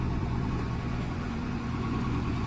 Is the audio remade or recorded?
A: remade